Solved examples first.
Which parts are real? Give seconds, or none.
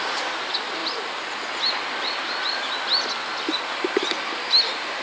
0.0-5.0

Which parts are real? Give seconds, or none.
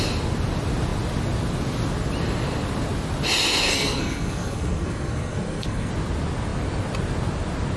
0.0-3.7; 5.9-7.8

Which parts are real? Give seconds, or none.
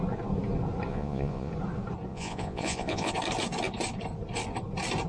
0.0-0.9; 1.5-2.1; 3.1-5.1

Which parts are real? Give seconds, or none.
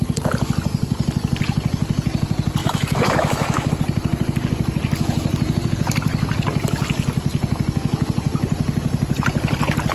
0.0-2.6; 3.7-9.9